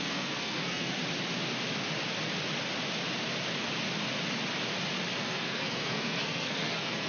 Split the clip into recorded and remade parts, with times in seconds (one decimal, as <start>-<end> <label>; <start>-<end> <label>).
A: 0.0-1.0 remade; 1.0-5.2 recorded; 5.2-7.1 remade